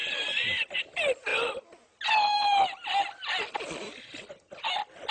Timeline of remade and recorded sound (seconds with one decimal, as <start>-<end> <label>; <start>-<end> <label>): 0.0-5.1 recorded